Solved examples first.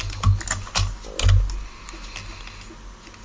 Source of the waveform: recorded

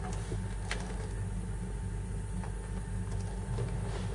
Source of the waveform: recorded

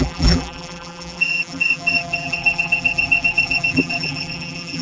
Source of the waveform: remade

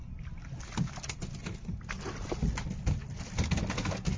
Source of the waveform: recorded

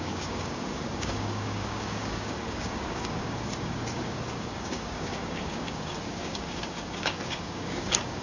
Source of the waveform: remade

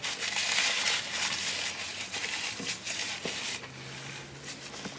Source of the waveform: recorded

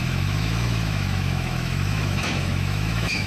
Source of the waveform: remade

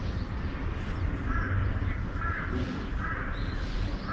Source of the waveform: recorded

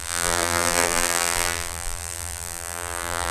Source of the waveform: remade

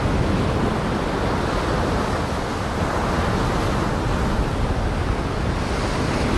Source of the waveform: recorded